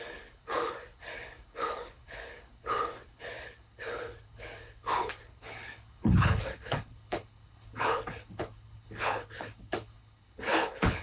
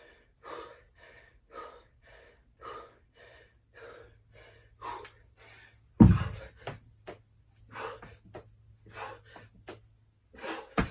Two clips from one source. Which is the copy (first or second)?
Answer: first